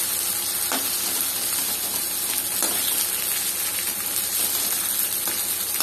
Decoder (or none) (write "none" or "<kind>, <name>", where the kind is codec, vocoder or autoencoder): none